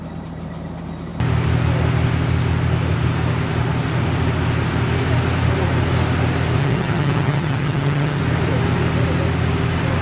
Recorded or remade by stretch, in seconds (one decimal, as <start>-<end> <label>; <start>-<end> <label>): 0.0-6.6 recorded; 6.6-8.2 remade; 8.2-10.0 recorded